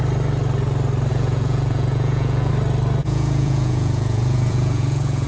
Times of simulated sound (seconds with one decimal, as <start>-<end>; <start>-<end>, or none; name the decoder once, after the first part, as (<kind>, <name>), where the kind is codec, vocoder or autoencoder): 1.1-2.5 (vocoder, Vocos); 3.0-5.3